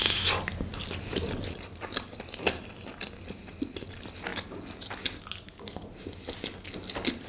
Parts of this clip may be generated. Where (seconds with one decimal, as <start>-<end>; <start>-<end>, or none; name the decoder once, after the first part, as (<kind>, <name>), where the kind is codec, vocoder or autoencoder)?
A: 0.7-2.6 (vocoder, BigVGAN v2)